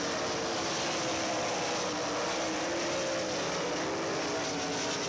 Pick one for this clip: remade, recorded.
recorded